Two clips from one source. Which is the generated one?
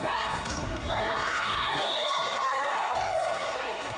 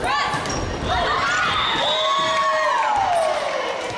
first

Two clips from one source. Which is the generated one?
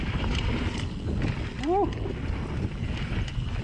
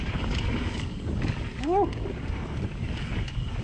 second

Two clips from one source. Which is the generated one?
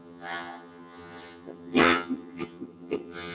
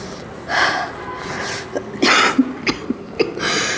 first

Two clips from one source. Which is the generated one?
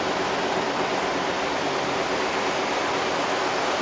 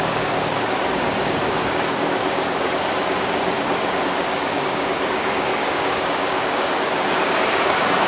second